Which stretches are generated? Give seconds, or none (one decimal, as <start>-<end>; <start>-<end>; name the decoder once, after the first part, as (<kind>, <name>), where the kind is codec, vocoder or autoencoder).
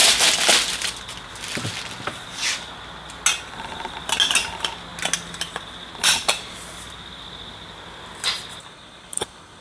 8.6-9.6 (codec, HILCodec)